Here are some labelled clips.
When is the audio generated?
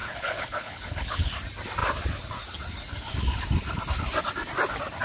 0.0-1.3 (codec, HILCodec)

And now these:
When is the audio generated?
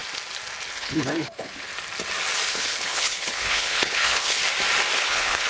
0.7-1.7 (codec, HILCodec); 2.5-4.4; 5.0-5.5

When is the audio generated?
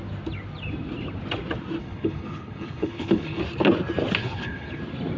1.8-3.4 (codec, HILCodec); 4.2-4.8